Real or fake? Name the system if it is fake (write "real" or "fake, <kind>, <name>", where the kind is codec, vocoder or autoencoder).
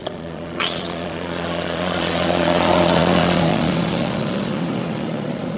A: fake, vocoder, Vocos